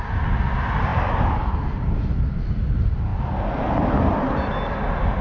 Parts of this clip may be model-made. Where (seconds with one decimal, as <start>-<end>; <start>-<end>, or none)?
0.9-2.4